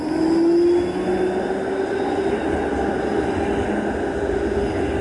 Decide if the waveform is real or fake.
real